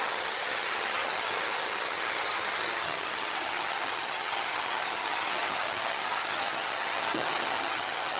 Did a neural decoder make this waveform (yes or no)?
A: yes